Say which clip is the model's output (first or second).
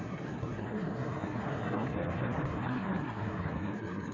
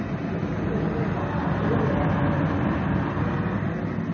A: first